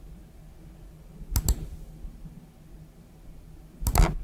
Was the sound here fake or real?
real